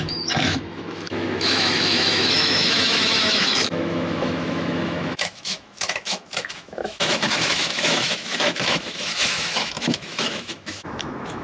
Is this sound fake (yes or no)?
yes